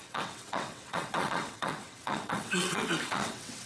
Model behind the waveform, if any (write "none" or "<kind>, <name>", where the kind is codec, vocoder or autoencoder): vocoder, WaveNeXt